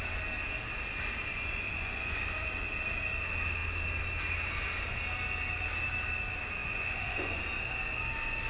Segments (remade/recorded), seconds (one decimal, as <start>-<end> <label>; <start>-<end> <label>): 0.0-1.3 recorded; 1.3-2.2 remade; 2.2-6.6 recorded; 6.6-7.4 remade; 7.4-8.5 recorded